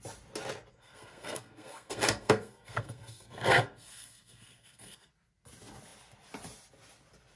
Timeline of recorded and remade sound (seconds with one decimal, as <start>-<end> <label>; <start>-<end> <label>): 0.0-0.7 recorded; 0.7-5.1 remade; 5.1-7.4 recorded